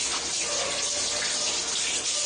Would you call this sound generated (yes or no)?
no